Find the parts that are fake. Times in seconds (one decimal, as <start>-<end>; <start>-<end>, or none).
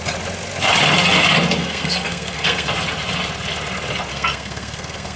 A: 1.6-2.7; 4.1-5.2